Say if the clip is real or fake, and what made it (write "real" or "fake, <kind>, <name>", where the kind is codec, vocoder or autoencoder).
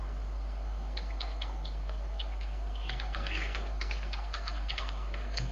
fake, codec, SNAC